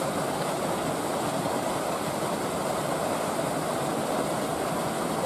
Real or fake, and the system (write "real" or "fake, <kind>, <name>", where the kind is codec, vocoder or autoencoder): real